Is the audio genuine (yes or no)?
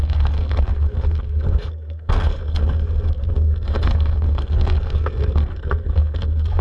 no